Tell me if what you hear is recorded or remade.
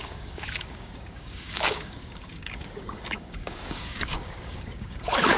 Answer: remade